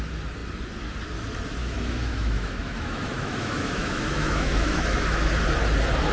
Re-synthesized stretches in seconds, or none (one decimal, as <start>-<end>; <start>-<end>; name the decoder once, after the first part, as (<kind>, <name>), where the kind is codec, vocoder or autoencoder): 1.6-5.3 (autoencoder, DAC-VAE)